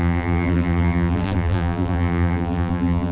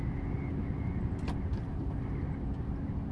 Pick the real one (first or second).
second